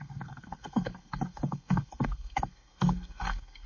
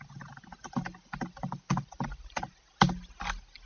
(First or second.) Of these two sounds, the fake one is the first